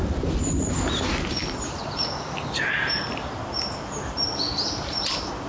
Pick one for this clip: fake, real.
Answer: real